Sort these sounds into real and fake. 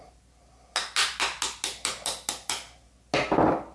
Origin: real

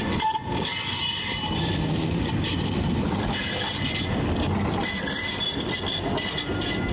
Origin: real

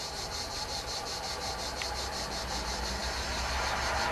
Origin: real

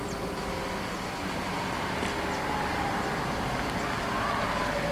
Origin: real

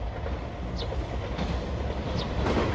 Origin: real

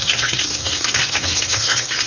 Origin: fake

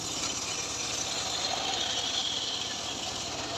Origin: real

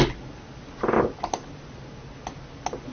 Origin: real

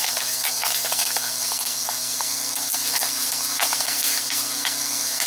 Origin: fake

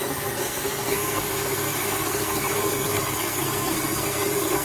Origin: fake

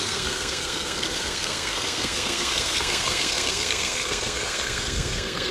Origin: fake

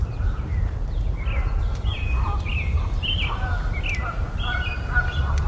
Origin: real